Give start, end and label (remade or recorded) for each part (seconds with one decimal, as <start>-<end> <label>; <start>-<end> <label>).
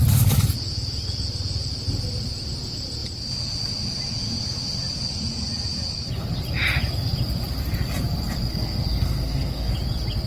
0.0-8.5 recorded; 8.5-9.7 remade; 9.7-10.3 recorded